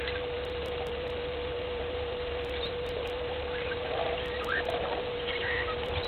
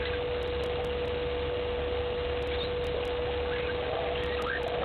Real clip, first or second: second